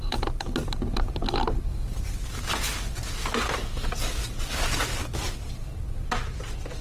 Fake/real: real